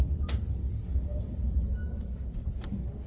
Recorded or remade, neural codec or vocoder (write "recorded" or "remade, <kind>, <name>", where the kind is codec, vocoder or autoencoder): recorded